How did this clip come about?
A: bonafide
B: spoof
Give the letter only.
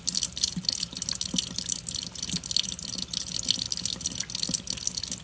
A